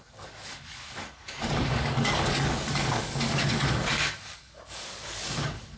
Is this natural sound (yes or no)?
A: no